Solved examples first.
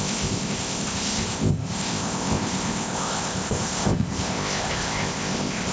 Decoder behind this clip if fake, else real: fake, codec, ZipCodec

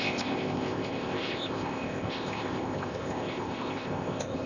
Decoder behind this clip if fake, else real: fake, codec, ZipCodec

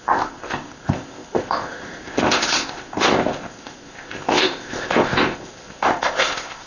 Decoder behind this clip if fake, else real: fake, codec, ZipCodec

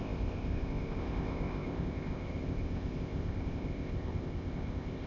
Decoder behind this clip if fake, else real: fake, codec, ZipCodec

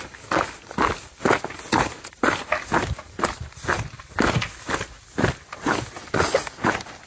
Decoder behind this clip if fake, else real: real